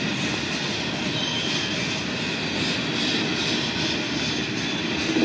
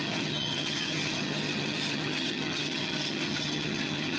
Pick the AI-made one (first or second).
second